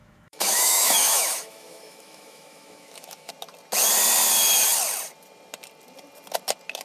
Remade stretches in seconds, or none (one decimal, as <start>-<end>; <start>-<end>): 0.0-3.3